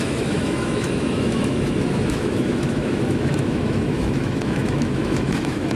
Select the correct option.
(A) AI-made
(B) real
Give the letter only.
A